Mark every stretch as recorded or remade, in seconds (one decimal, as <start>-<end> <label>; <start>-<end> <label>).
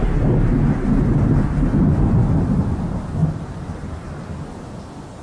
0.0-3.2 recorded; 3.2-4.2 remade; 4.2-5.2 recorded